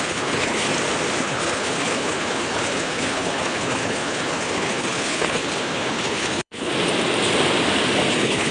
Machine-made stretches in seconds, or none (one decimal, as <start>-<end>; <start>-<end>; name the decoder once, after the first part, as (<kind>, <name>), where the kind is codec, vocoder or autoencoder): 0.0-0.7 (codec, HILCodec); 1.2-6.7; 8.1-8.5